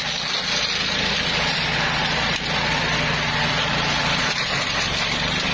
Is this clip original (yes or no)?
yes